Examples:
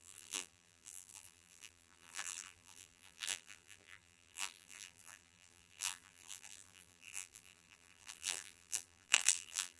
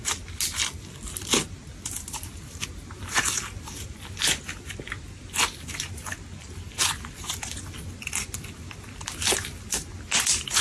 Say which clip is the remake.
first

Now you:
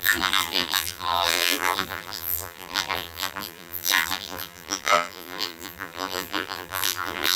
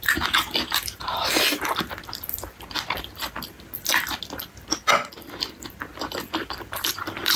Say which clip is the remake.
first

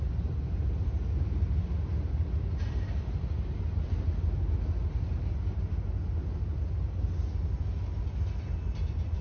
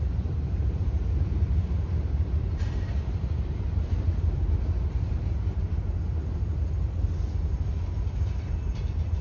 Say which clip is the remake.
second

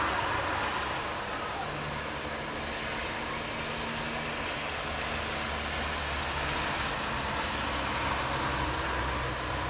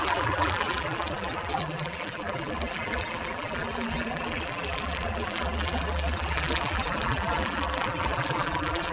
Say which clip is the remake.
second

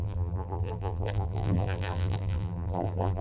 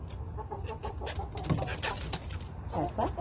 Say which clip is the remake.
first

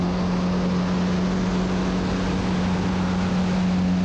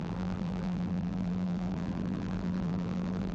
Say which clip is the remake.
second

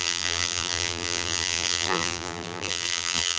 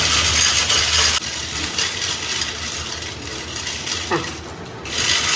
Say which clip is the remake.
first